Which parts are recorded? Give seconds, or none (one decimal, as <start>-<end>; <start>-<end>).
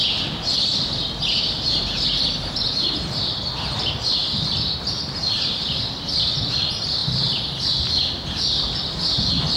0.0-4.2; 6.3-9.6